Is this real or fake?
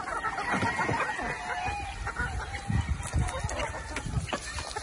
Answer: real